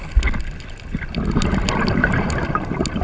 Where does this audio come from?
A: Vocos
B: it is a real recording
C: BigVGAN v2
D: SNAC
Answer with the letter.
B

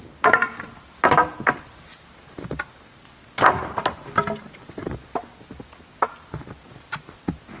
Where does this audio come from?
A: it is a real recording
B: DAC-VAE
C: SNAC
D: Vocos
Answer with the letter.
A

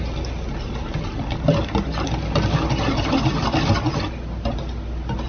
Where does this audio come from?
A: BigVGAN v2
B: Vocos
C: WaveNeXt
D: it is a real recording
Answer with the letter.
D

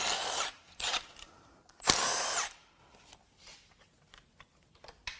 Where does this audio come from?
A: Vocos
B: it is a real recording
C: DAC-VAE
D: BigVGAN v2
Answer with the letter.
D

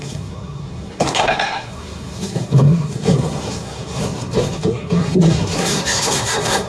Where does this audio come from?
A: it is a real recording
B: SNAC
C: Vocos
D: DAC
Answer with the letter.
B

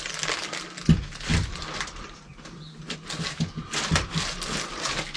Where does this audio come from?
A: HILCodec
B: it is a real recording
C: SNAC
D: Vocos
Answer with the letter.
B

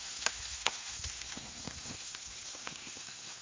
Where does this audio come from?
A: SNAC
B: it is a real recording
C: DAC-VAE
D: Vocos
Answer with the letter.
A